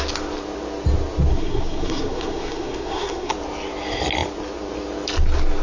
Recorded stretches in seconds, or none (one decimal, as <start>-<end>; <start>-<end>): 0.0-1.3; 3.3-5.6